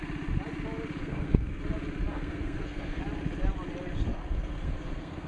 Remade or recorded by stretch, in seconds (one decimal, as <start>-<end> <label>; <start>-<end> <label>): 0.0-1.0 recorded; 1.0-1.6 remade; 1.6-2.1 recorded; 2.1-3.0 remade; 3.0-4.1 recorded; 4.1-5.3 remade